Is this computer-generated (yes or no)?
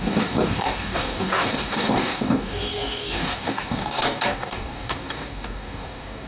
yes